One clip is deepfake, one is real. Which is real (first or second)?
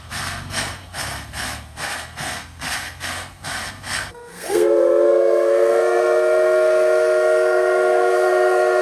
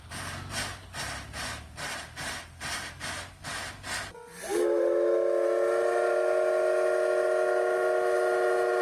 second